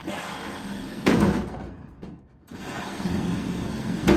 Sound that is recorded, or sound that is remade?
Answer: remade